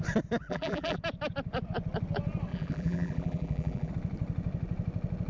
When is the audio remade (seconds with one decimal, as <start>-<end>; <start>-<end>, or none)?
0.4-1.0; 2.5-3.9